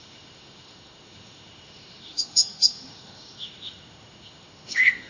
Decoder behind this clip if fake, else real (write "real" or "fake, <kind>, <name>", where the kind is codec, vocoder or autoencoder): fake, autoencoder, DAC-VAE